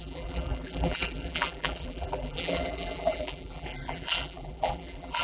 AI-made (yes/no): yes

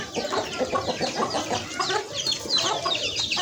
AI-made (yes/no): yes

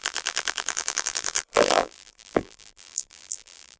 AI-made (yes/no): yes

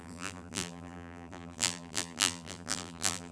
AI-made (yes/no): yes